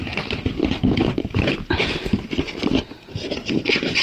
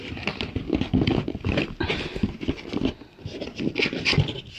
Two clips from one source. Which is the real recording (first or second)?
second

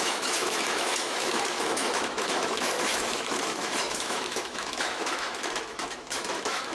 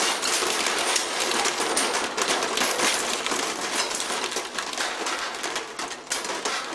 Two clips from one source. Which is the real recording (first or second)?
second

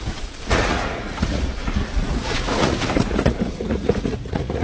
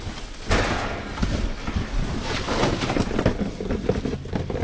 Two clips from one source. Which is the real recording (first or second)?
second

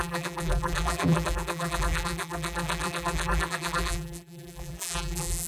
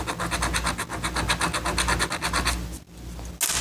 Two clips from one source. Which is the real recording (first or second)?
second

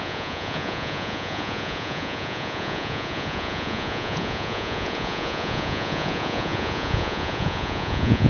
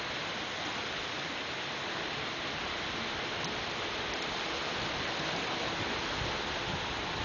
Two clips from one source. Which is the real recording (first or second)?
second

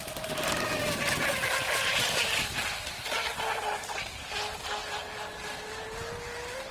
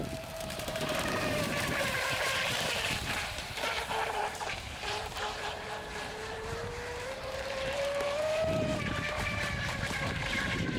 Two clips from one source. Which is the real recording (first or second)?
first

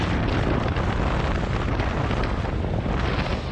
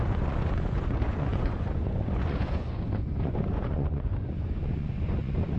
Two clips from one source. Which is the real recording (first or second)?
first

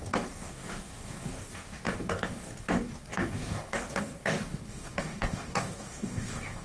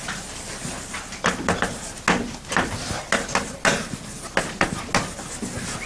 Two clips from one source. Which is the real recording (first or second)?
second